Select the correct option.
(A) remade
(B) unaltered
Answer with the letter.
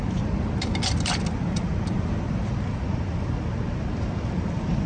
B